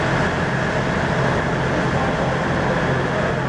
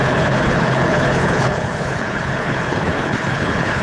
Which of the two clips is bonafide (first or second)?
first